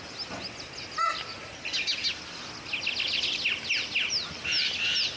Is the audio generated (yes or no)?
no